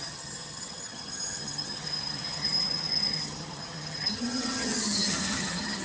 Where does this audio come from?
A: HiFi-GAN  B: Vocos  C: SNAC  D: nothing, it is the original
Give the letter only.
A